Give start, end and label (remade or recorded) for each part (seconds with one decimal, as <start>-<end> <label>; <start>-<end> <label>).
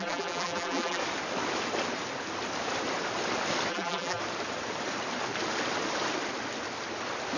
0.0-1.0 remade; 1.0-3.7 recorded; 3.7-4.2 remade; 4.2-7.4 recorded